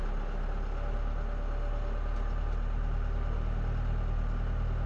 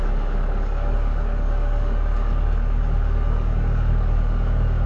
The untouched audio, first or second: first